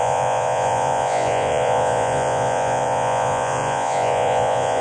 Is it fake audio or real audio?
fake